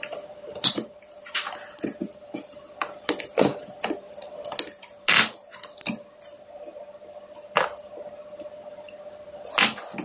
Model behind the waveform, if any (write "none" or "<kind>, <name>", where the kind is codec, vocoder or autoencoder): none